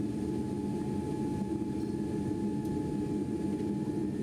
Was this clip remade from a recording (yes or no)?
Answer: no